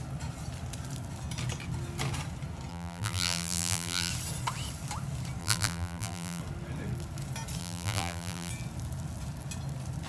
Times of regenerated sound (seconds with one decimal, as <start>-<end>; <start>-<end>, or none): 2.7-4.1; 5.4-6.4; 7.6-8.5